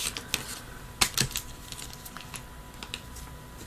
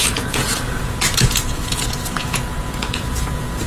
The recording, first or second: first